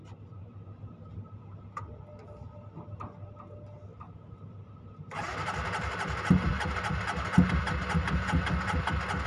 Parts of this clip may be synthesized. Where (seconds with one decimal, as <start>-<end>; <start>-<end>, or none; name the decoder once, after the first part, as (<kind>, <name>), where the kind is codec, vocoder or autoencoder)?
none